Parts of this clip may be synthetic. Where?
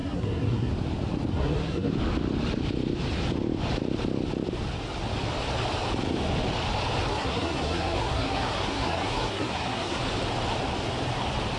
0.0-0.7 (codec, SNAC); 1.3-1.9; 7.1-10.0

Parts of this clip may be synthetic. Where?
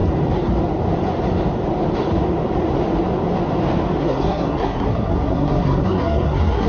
4.0-6.7 (codec, SNAC)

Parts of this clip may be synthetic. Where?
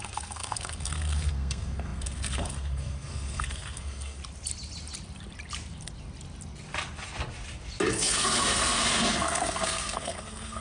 0.0-4.2 (codec, SNAC); 7.9-10.6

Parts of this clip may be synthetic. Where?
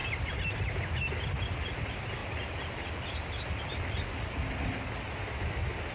none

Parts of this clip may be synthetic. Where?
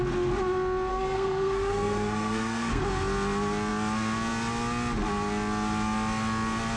0.9-2.8 (codec, SNAC)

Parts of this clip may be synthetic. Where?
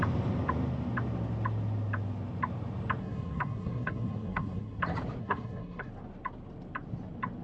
3.0-4.8 (codec, SNAC); 5.2-5.9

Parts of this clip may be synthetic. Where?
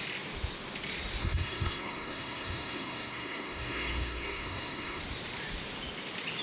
1.2-5.0 (codec, SNAC)